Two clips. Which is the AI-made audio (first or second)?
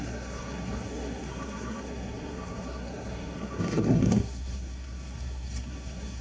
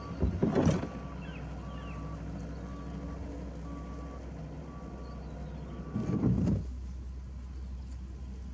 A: first